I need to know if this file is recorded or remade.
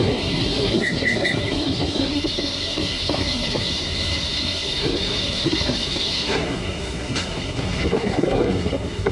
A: remade